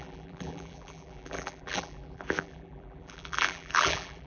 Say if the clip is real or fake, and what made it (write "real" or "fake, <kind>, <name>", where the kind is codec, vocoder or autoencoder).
fake, vocoder, BigVGAN v2